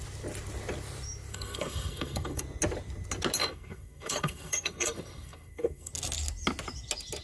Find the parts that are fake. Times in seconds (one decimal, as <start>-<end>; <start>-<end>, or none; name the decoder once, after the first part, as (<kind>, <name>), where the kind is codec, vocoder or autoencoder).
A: 1.3-2.4 (codec, SNAC); 3.4-5.9